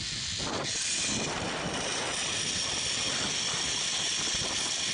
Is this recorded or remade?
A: recorded